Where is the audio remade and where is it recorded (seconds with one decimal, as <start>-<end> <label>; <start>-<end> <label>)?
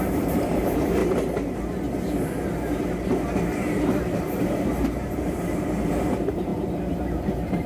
0.0-1.0 remade; 1.0-3.7 recorded; 3.7-7.7 remade